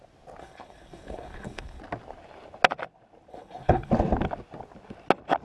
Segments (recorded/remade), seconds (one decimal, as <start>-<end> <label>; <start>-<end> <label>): 0.0-0.4 recorded; 0.4-1.8 remade; 1.8-3.3 recorded; 3.3-3.9 remade; 3.9-5.4 recorded